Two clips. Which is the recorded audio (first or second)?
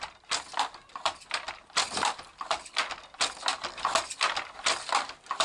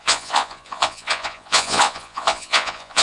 first